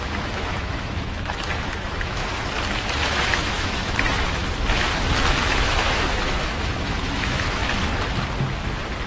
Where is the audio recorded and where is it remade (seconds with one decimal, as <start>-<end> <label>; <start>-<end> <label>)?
0.0-2.2 remade; 2.2-2.9 recorded; 2.9-4.4 remade; 4.4-5.5 recorded; 5.5-7.6 remade; 7.6-9.1 recorded